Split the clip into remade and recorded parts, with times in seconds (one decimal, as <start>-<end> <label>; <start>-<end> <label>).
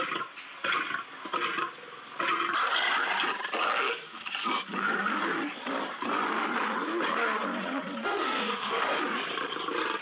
0.0-8.0 recorded; 8.0-9.0 remade; 9.0-10.0 recorded